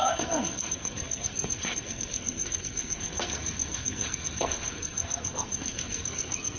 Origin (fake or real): fake